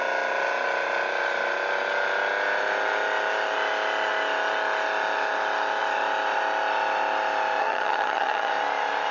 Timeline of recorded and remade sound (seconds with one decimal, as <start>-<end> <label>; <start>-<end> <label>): 0.0-7.6 recorded; 7.6-8.5 remade; 8.5-9.1 recorded